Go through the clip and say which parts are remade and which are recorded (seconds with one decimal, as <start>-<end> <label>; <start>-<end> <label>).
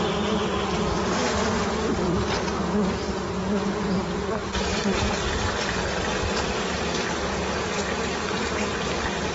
0.0-9.3 recorded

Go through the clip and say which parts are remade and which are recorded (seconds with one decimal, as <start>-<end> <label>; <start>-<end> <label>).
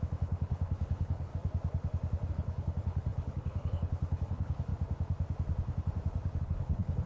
0.0-1.3 remade; 1.3-2.3 recorded; 2.3-4.7 remade; 4.7-6.4 recorded; 6.4-7.1 remade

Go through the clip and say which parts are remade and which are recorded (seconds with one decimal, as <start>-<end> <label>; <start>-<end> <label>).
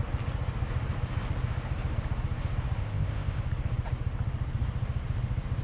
0.0-2.8 recorded; 2.8-3.4 remade; 3.4-5.6 recorded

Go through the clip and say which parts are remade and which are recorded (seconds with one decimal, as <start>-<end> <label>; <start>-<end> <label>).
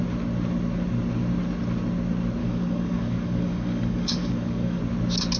0.0-2.4 recorded; 2.4-4.8 remade; 4.8-5.4 recorded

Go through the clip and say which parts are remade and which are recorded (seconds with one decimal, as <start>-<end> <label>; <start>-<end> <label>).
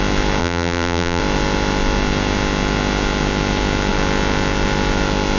0.0-0.4 recorded; 0.4-1.2 remade; 1.2-5.4 recorded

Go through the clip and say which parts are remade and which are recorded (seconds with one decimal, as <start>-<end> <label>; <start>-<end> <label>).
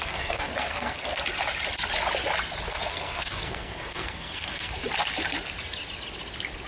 0.0-1.1 remade; 1.1-2.7 recorded; 2.7-4.8 remade; 4.8-6.7 recorded